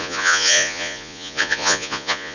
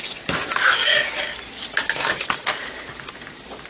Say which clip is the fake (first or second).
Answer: first